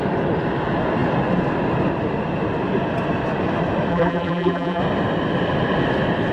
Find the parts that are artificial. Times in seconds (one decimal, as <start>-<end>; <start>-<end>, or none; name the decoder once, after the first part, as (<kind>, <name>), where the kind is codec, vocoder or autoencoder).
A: 3.9-4.8 (vocoder, BigVGAN v2)